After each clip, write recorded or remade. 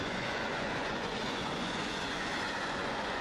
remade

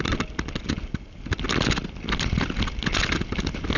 recorded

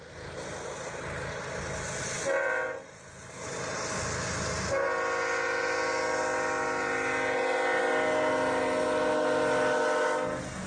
recorded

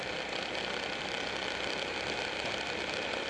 recorded